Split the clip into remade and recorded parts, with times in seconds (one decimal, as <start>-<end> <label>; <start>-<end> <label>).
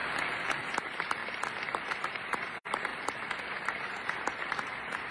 0.0-0.6 recorded; 0.6-1.2 remade; 1.2-2.0 recorded; 2.0-2.9 remade; 2.9-3.5 recorded; 3.5-5.1 remade